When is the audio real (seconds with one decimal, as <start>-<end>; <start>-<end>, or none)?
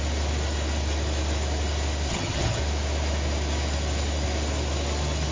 0.0-2.1; 2.6-5.3